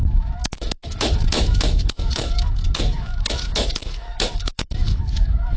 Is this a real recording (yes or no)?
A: no